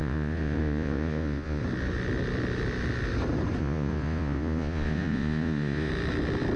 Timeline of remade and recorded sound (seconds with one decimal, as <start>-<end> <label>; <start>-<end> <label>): 0.0-1.6 remade; 1.6-3.6 recorded; 3.6-5.9 remade; 5.9-6.6 recorded